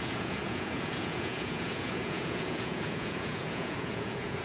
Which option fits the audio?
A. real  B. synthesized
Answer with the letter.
B